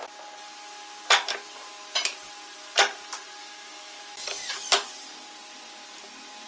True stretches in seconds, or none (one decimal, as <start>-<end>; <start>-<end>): 0.0-3.4; 4.0-6.5